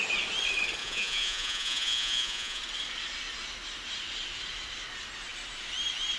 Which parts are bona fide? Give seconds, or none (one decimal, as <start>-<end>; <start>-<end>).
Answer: 0.0-0.8; 2.6-6.2